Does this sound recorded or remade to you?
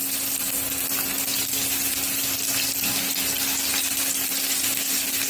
recorded